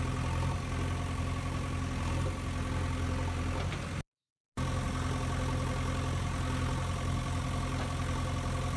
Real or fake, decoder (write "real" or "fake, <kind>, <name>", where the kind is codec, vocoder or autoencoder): real